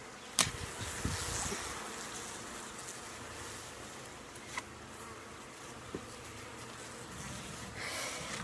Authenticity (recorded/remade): recorded